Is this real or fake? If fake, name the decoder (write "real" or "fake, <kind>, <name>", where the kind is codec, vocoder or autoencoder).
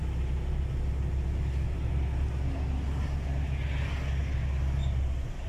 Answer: real